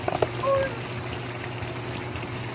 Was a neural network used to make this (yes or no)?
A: no